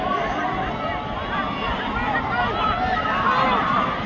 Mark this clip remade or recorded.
recorded